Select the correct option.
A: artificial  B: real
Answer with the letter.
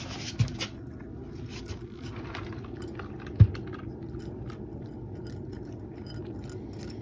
B